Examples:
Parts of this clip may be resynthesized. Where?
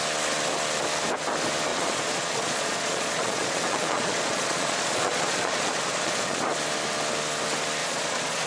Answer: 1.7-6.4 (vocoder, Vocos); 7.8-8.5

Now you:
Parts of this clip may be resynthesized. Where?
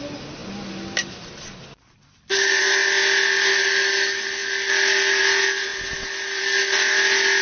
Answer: none